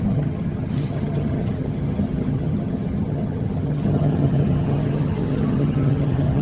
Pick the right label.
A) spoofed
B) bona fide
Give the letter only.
A